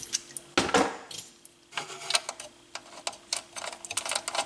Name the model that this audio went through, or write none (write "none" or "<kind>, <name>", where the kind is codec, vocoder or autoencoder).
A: none